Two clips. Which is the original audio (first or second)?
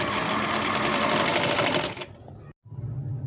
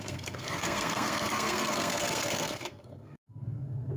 first